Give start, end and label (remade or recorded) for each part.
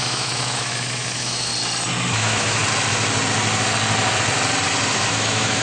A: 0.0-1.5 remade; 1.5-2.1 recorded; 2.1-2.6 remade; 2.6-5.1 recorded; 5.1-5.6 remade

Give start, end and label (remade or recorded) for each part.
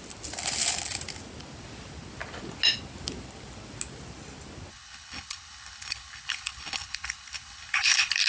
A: 0.0-4.7 recorded; 4.7-8.3 remade